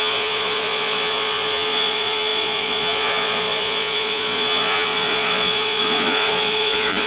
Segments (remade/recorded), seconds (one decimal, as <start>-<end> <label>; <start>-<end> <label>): 0.0-7.1 remade